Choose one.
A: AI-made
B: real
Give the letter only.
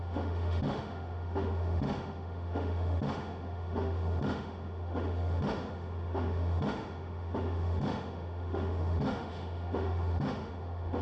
A